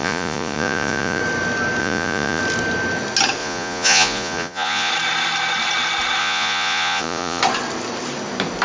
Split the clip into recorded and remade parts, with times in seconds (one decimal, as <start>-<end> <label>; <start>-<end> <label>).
0.0-1.2 remade; 1.2-1.8 recorded; 1.8-2.4 remade; 2.4-3.4 recorded; 3.4-4.9 remade; 4.9-6.2 recorded; 6.2-7.4 remade; 7.4-8.6 recorded